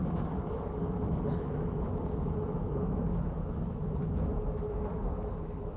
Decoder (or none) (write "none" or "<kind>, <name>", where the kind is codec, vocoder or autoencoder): autoencoder, DAC-VAE